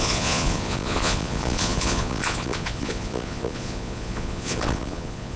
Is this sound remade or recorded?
remade